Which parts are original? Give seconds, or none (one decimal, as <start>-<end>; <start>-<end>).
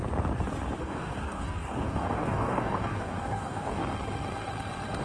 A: 0.0-0.8; 3.8-5.0